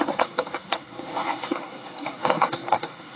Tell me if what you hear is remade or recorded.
remade